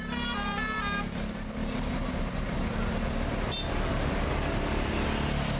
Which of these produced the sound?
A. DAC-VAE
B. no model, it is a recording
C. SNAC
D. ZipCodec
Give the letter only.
B